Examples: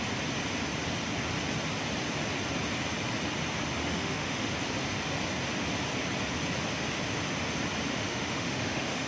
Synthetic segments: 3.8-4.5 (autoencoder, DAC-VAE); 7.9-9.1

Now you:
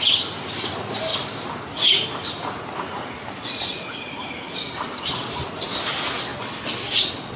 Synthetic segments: none

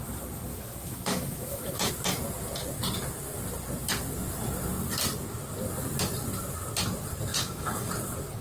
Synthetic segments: 0.5-1.9 (autoencoder, DAC-VAE); 7.3-7.9

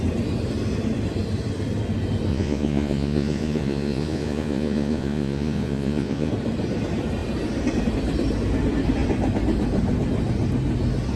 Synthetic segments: 2.3-6.3 (vocoder, Vocos)

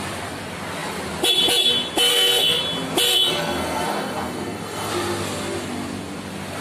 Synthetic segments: 2.1-2.6 (codec, SNAC); 3.1-4.9